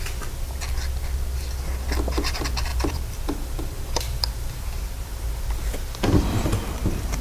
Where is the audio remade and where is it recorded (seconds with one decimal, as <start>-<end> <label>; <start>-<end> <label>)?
0.0-2.7 recorded; 2.7-7.2 remade